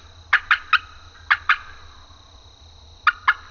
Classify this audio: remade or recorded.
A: recorded